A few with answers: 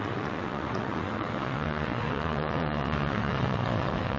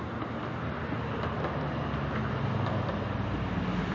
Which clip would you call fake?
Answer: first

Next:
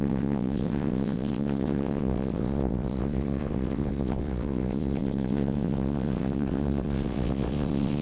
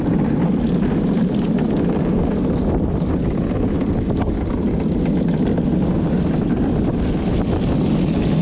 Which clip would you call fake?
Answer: first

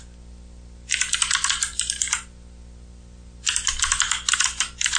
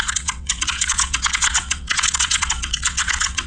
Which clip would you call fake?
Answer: second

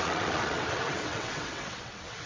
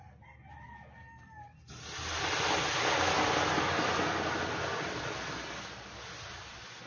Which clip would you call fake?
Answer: first